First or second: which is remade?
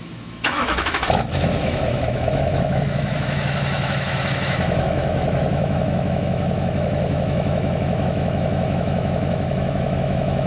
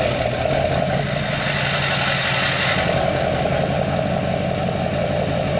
first